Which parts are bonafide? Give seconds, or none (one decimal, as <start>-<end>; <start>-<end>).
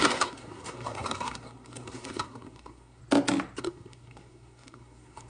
3.0-3.6